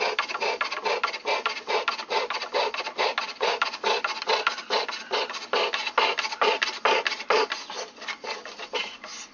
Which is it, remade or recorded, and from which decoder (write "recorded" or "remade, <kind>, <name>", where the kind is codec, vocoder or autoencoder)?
recorded